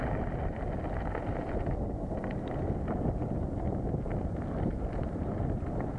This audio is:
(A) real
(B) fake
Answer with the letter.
A